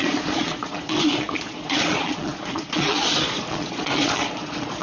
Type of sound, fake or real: fake